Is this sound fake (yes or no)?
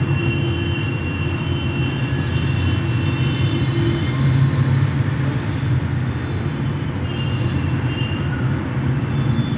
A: no